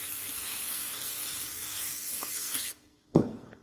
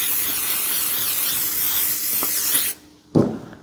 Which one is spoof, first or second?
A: first